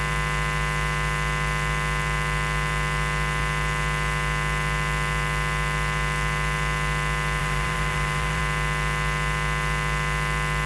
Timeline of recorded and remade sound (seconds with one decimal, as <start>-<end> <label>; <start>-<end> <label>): 0.0-7.4 recorded; 7.4-8.4 remade; 8.4-10.7 recorded